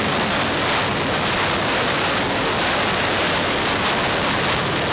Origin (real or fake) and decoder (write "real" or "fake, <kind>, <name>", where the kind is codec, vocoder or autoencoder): real